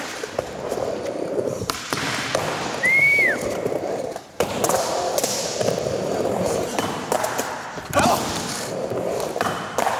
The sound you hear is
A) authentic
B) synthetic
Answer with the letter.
B